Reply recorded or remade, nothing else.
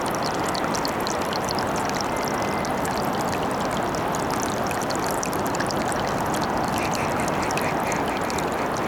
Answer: recorded